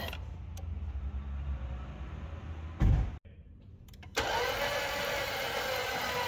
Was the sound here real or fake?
real